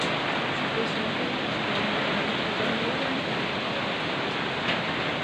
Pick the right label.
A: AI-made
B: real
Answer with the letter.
B